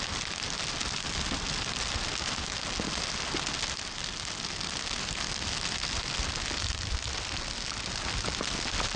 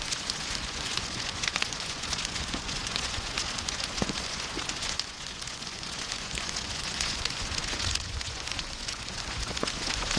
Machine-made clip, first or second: second